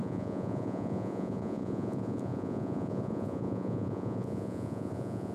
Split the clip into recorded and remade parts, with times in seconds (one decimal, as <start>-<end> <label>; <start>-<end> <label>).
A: 0.0-5.3 remade